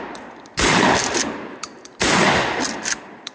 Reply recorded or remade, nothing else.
recorded